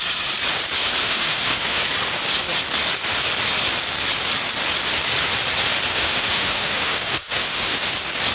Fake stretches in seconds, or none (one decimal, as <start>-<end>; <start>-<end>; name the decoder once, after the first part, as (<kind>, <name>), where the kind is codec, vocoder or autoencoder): 1.0-1.8 (autoencoder, DAC-VAE); 5.9-7.9